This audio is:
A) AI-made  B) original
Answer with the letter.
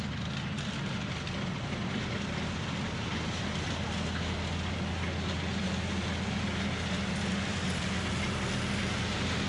B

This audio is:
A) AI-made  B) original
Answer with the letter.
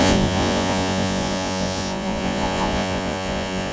A